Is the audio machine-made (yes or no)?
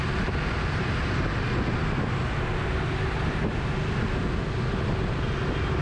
no